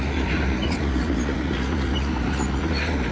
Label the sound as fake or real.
fake